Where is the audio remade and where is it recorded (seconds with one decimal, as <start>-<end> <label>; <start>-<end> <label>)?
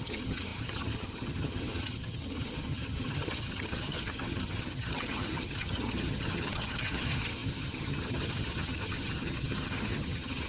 0.0-10.5 remade